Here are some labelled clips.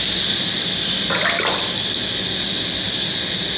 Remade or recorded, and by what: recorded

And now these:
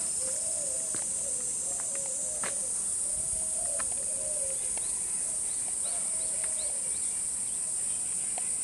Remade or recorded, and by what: recorded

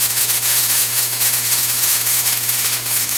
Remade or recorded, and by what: remade, autoencoder, DAC-VAE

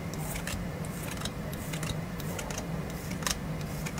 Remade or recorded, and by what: recorded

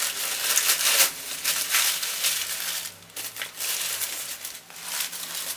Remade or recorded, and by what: recorded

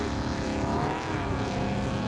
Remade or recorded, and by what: remade, autoencoder, DAC-VAE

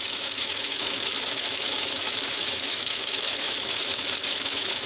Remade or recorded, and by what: remade, autoencoder, DAC-VAE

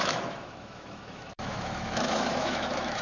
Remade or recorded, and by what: remade, autoencoder, DAC-VAE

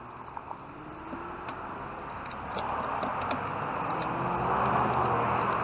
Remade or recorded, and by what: recorded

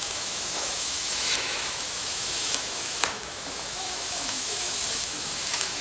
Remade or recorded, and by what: remade, autoencoder, DAC-VAE